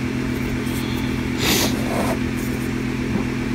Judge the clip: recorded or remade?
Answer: recorded